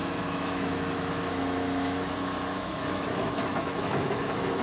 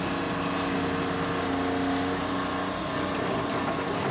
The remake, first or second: first